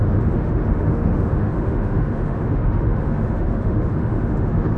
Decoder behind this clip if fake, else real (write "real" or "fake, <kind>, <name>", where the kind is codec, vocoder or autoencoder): fake, autoencoder, DAC-VAE